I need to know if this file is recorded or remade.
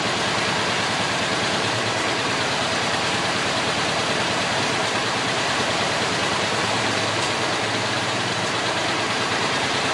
remade